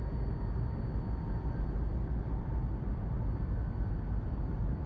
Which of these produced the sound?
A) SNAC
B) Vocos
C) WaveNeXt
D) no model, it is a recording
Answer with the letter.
D